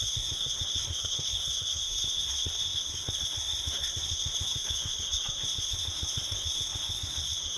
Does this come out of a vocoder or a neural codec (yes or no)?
yes